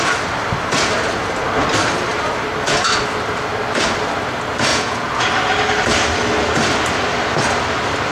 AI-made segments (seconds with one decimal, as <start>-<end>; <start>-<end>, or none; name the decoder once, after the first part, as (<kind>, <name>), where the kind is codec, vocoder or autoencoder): 4.7-5.3 (vocoder, Vocos)

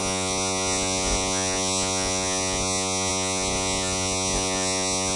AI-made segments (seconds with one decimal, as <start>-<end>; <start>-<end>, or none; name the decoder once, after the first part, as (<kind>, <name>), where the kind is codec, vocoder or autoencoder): 0.0-5.2 (vocoder, Vocos)

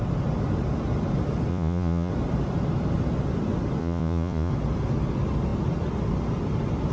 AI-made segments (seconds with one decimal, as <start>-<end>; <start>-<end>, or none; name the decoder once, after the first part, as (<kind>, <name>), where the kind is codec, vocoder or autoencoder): 1.5-2.1 (vocoder, Vocos); 3.8-4.5

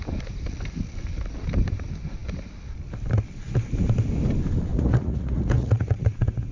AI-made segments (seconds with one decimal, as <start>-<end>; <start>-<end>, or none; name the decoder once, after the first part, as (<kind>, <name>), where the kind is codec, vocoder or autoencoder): 4.7-6.5 (vocoder, Vocos)

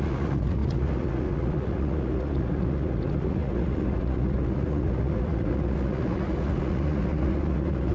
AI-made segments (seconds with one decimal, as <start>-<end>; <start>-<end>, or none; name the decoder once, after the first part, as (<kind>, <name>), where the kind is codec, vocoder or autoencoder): 0.0-7.9 (vocoder, Vocos)

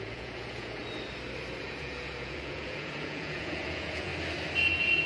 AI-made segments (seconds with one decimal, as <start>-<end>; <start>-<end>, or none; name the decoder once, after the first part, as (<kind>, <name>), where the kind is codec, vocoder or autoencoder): 0.0-0.8 (vocoder, Vocos); 1.6-4.1; 4.6-5.1

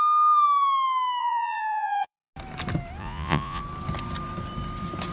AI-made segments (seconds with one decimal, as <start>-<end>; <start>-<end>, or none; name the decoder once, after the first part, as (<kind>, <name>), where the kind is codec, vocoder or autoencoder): 1.2-2.3 (vocoder, Vocos); 3.0-3.6

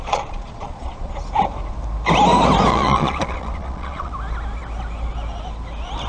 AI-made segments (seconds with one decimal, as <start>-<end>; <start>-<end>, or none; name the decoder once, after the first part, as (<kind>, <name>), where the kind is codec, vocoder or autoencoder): 0.0-1.1 (vocoder, Vocos); 2.7-4.1